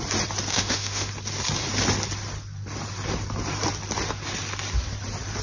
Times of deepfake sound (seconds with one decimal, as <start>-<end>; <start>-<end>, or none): 0.5-1.1